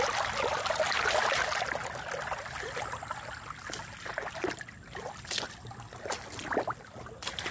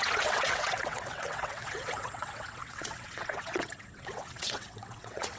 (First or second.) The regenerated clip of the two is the second